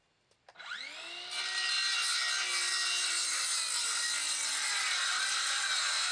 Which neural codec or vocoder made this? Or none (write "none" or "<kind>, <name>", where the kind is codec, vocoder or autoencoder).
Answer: none